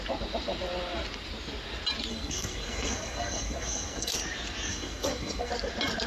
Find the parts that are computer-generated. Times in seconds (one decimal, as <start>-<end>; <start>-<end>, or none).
2.1-4.1; 4.7-5.5